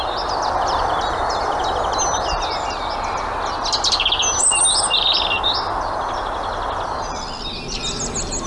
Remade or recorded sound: recorded